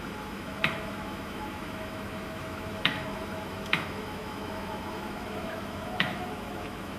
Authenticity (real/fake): fake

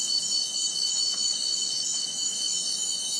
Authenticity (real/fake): fake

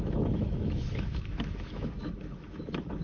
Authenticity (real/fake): fake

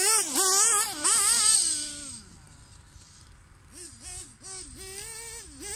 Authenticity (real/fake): real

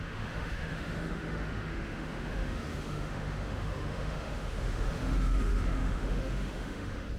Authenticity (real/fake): fake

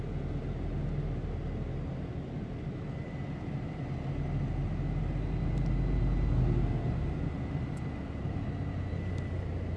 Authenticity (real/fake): real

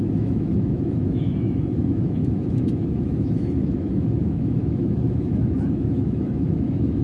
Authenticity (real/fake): fake